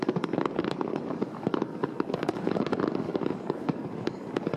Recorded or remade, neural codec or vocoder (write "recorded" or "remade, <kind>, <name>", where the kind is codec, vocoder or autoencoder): remade, codec, DAC